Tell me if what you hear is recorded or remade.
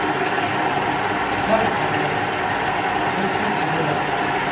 recorded